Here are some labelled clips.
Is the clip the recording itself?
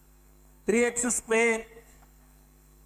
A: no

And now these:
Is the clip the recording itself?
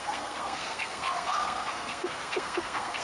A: no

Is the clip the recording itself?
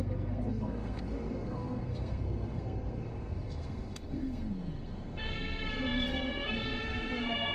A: no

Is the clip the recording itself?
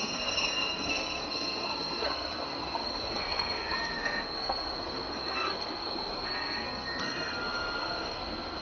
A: no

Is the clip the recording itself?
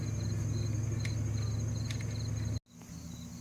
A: yes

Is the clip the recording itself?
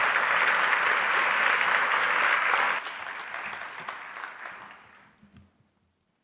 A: yes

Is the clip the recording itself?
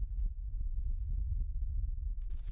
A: yes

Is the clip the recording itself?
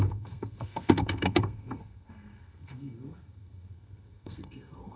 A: no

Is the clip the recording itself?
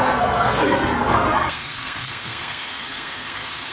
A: no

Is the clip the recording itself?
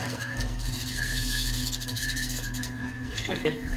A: no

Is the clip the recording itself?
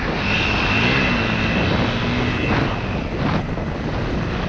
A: yes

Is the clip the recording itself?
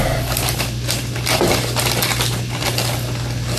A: yes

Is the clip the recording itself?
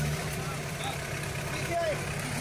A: yes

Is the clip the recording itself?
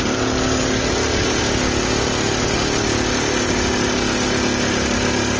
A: yes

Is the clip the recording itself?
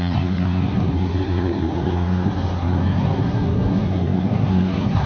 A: no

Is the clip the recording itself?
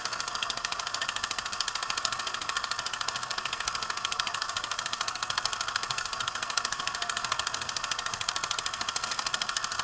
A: no